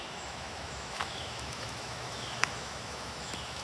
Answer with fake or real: fake